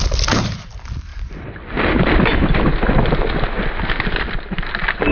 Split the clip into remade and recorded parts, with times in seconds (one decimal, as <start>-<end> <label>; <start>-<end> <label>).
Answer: 0.0-5.1 recorded